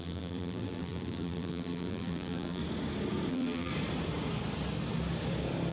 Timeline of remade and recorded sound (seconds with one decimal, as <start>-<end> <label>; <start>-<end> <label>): 0.0-2.6 remade; 2.6-3.3 recorded; 3.3-3.7 remade; 3.7-5.7 recorded